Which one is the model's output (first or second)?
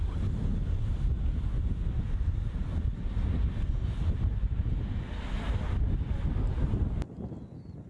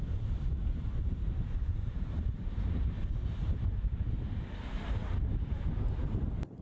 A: second